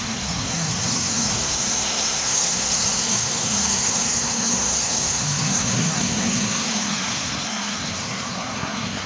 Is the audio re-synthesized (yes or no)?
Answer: yes